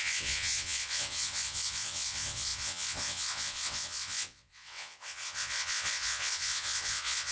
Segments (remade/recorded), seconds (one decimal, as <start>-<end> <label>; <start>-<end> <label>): 0.0-7.3 remade